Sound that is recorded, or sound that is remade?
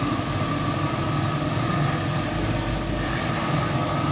remade